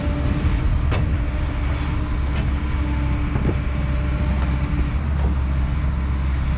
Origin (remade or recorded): recorded